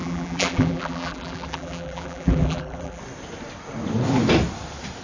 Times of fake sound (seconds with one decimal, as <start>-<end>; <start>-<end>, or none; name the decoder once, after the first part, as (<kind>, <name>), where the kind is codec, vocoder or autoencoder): 0.0-3.0 (vocoder, BigVGAN v2)